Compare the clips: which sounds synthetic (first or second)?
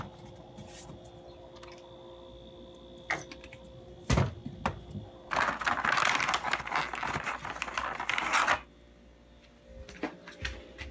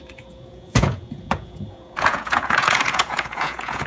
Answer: second